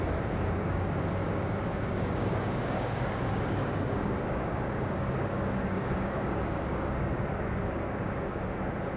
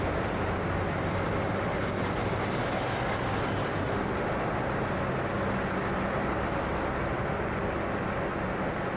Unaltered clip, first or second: second